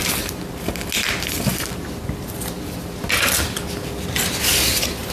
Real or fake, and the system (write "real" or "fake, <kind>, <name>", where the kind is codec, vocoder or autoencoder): real